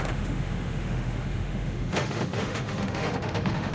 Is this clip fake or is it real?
fake